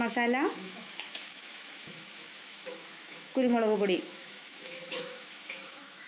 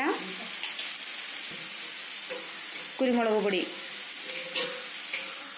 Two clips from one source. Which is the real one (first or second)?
second